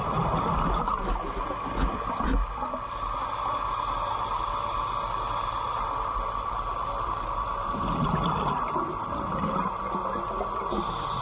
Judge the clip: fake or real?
real